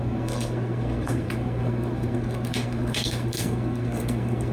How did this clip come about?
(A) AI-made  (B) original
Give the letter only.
A